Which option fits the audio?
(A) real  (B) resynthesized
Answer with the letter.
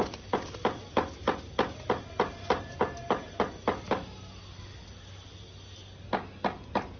A